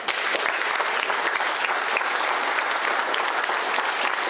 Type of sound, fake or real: real